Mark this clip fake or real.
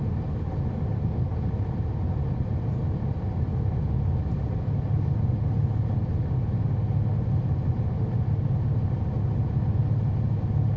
real